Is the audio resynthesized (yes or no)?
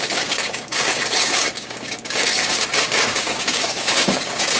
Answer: yes